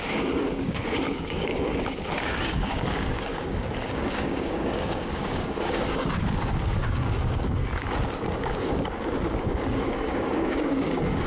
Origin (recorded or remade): remade